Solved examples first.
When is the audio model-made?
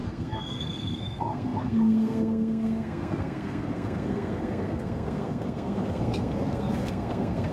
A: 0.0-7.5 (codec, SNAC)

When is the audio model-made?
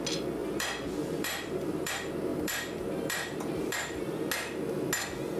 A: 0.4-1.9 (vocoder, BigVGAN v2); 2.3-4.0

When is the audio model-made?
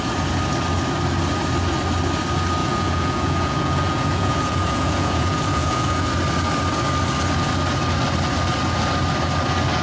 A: 2.6-6.1 (vocoder, Vocos)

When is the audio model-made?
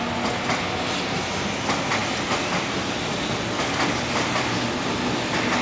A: none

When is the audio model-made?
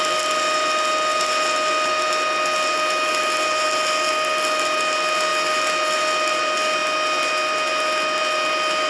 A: none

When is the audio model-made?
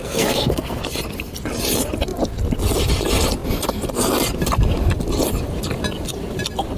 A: 0.0-0.8 (codec, SNAC)